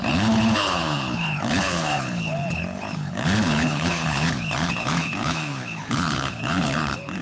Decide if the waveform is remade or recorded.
remade